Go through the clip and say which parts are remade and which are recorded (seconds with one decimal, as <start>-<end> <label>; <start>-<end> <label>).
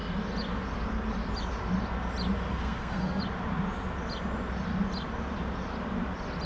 0.0-2.5 recorded; 2.5-3.2 remade; 3.2-6.5 recorded